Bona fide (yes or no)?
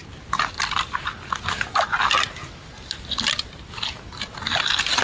yes